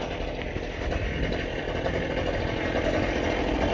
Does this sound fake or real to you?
real